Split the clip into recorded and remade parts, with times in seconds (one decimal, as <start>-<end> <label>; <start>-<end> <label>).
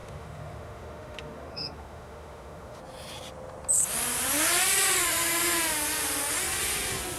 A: 0.0-2.8 remade; 2.8-7.2 recorded